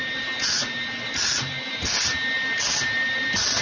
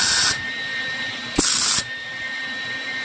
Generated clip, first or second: second